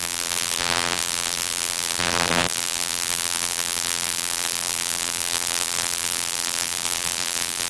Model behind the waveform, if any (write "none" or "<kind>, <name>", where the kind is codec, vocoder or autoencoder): vocoder, BigVGAN v2